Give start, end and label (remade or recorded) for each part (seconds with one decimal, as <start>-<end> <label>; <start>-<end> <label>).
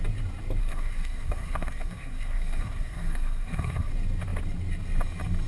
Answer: 0.0-0.6 recorded; 0.6-3.9 remade; 3.9-5.5 recorded